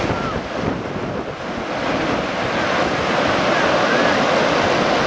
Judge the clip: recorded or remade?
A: recorded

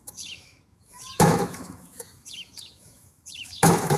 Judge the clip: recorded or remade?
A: remade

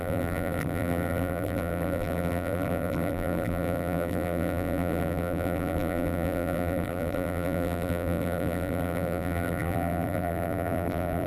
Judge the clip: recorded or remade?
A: remade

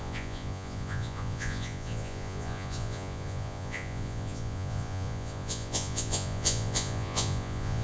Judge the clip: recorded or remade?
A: remade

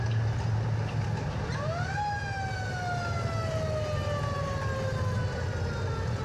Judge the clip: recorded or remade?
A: recorded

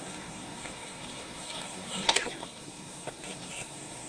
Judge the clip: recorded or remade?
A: remade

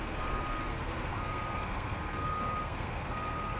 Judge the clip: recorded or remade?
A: remade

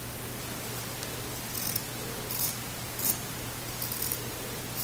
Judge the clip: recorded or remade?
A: recorded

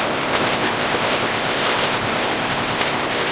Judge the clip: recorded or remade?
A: remade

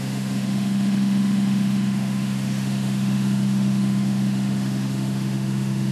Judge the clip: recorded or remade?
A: remade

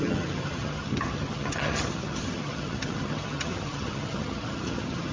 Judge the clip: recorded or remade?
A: remade